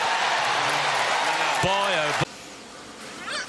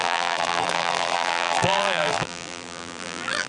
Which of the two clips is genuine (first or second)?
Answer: first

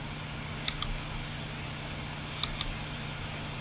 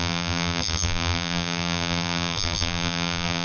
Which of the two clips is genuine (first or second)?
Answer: first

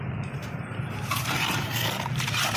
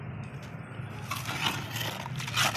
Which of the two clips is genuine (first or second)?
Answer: second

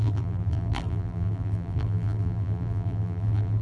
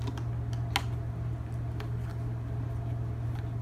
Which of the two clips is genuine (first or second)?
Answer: second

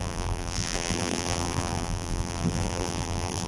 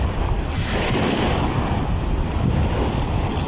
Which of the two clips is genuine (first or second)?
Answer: second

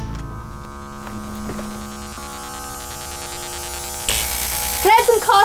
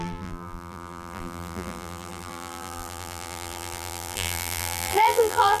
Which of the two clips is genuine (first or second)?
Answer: first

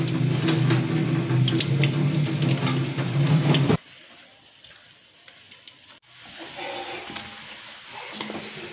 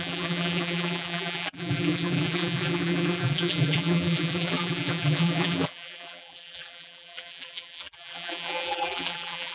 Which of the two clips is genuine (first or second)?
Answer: first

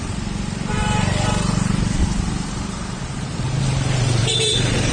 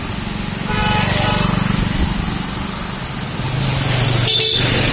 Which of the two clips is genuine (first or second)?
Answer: second